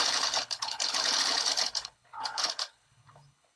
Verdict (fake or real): fake